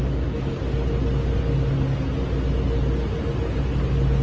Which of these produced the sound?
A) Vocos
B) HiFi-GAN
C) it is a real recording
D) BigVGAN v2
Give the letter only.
C